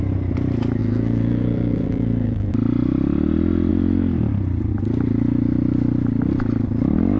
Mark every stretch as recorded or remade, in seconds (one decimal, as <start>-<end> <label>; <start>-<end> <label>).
0.0-0.8 recorded; 0.8-2.5 remade; 2.5-7.2 recorded